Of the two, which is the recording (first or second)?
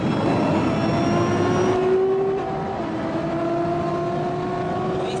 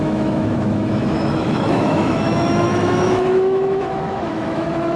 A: first